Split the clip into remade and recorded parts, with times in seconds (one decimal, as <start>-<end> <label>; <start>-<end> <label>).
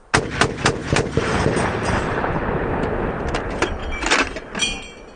0.0-0.8 recorded; 0.8-2.3 remade; 2.3-5.2 recorded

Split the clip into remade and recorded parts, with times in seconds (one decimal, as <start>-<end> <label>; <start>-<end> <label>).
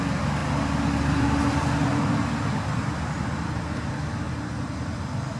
0.0-0.4 recorded; 0.4-3.6 remade; 3.6-5.4 recorded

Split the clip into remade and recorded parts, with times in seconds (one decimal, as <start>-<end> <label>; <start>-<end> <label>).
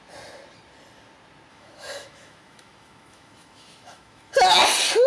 0.0-1.5 recorded; 1.5-4.6 remade; 4.6-5.1 recorded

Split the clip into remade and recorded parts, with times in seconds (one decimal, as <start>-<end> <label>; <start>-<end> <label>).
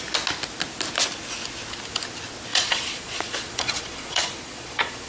0.0-2.5 recorded; 2.5-5.1 remade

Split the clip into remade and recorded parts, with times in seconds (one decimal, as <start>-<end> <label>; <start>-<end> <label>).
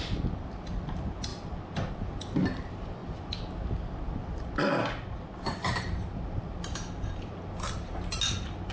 0.0-8.7 recorded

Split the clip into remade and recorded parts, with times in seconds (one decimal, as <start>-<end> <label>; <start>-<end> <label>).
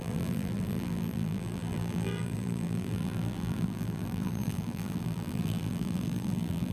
0.0-6.7 remade